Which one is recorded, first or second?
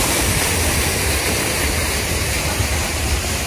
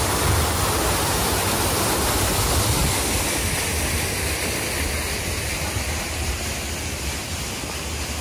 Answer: second